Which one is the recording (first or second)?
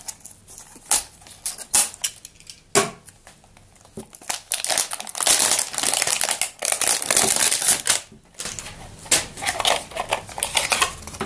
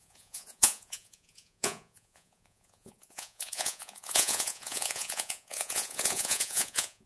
first